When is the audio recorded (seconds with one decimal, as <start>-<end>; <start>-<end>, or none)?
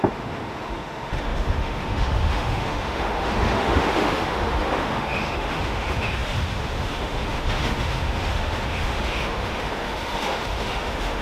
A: none